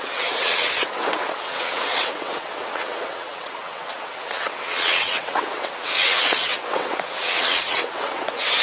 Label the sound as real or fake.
fake